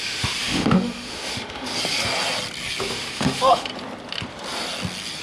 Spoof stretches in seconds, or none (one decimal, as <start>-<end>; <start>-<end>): 0.0-1.7; 2.8-3.7